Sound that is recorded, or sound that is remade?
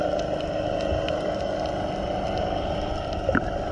recorded